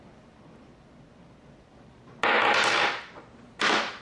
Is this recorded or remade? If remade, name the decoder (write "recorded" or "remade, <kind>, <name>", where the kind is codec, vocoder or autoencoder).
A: recorded